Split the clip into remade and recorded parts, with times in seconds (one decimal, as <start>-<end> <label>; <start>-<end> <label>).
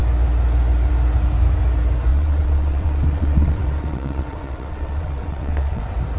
0.0-2.1 recorded; 2.1-5.8 remade; 5.8-6.2 recorded